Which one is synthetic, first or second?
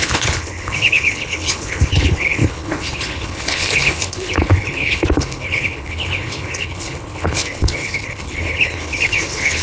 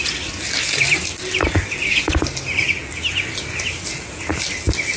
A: first